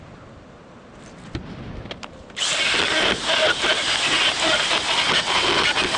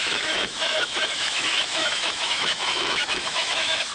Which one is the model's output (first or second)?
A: second